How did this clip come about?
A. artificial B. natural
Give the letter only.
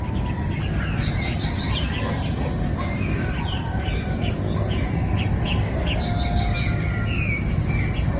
B